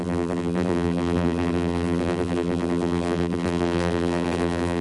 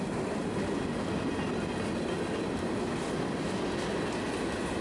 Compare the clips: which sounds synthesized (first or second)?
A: first